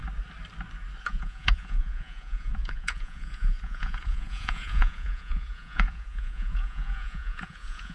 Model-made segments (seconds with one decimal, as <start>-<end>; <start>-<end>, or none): 1.0-7.9